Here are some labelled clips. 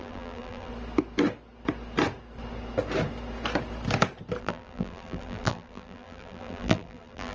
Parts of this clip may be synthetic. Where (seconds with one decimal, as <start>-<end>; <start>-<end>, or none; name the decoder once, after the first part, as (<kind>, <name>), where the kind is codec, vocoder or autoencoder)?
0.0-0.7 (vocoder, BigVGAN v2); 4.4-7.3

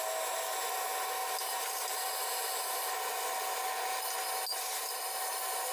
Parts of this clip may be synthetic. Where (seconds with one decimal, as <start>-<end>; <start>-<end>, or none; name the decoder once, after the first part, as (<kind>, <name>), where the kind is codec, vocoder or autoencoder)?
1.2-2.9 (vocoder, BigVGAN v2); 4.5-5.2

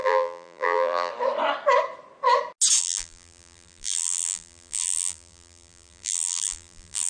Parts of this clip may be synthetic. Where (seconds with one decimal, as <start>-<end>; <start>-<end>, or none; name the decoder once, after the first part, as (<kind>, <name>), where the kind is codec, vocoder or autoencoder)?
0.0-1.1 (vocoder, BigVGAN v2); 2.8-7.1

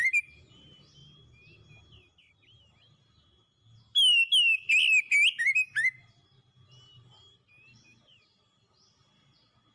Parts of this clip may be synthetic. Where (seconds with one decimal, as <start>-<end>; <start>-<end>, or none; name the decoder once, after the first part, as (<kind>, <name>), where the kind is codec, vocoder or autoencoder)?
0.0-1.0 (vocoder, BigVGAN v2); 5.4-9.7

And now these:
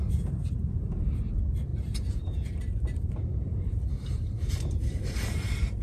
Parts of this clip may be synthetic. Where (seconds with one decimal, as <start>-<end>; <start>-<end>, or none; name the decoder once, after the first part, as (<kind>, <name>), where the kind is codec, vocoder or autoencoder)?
0.0-5.8 (vocoder, BigVGAN v2)